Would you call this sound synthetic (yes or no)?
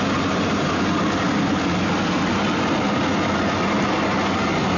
no